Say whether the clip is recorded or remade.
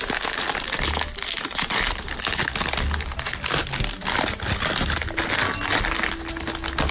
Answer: recorded